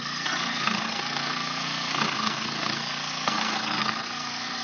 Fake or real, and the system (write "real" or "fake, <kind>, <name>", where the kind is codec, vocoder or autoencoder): fake, codec, SNAC